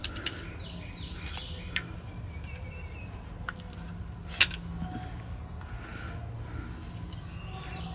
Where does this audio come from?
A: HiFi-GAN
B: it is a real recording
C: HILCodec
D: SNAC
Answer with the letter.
B